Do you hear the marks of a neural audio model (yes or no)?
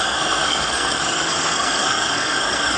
yes